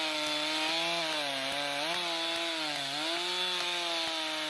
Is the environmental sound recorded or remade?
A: recorded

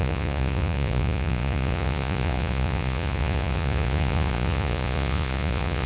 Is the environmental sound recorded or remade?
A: remade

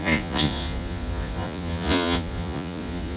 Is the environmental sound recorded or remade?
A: remade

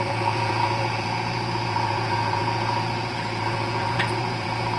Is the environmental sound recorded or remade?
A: remade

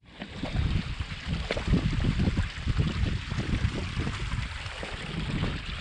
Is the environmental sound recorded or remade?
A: recorded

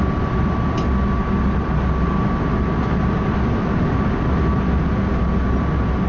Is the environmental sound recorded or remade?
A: recorded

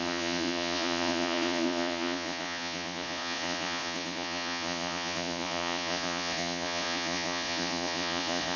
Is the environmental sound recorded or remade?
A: remade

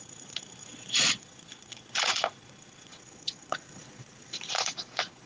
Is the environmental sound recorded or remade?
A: remade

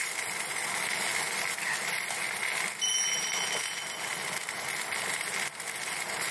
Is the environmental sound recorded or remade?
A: recorded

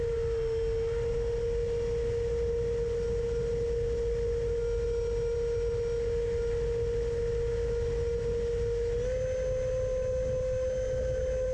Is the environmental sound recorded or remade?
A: recorded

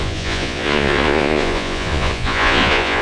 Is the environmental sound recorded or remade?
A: remade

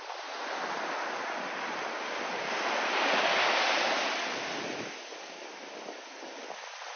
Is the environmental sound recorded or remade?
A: recorded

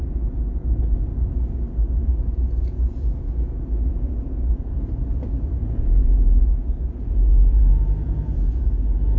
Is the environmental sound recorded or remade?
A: remade